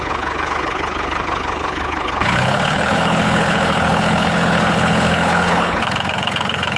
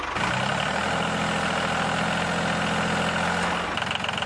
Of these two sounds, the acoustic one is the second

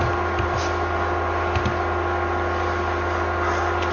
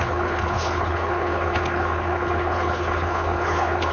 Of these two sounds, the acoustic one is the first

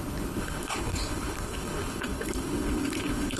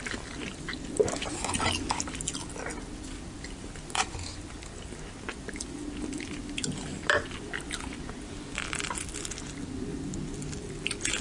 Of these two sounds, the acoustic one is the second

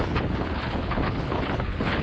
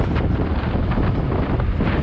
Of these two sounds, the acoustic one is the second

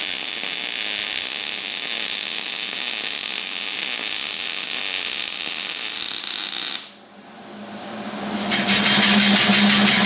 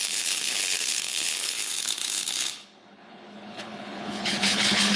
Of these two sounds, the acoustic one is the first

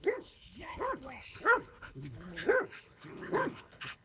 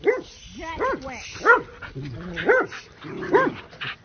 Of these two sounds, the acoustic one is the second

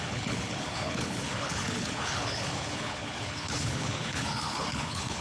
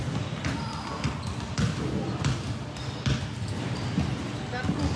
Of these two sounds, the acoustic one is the second